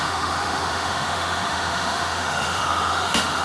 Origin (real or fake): fake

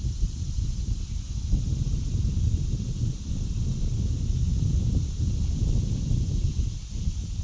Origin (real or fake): real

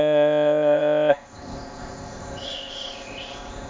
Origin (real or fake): fake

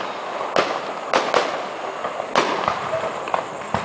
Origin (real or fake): real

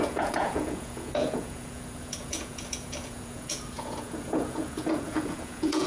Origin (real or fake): fake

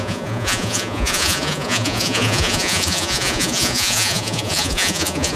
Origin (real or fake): fake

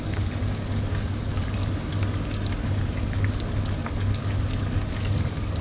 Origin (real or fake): fake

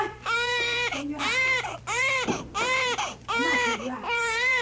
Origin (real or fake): fake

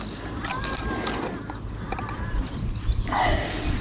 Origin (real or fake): real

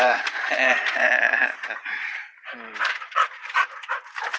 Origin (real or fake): fake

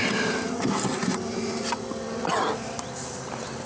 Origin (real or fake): real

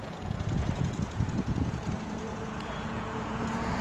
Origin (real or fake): fake